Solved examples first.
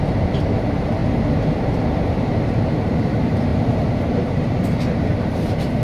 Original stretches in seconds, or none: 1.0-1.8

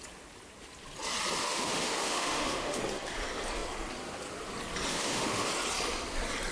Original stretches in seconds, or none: 0.0-1.4; 2.8-4.9; 5.5-6.5